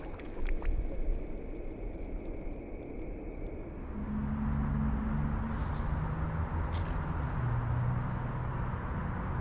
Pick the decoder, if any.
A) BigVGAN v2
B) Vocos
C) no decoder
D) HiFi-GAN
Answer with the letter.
C